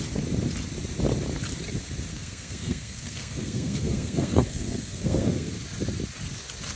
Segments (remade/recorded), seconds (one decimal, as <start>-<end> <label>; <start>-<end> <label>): 0.0-2.1 recorded; 2.1-5.5 remade; 5.5-6.8 recorded